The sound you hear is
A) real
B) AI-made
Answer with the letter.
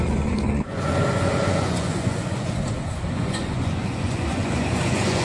B